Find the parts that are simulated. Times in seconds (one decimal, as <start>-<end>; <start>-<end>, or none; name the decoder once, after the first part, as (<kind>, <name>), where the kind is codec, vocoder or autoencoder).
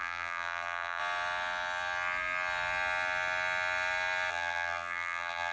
0.0-1.0 (vocoder, BigVGAN v2); 4.3-5.5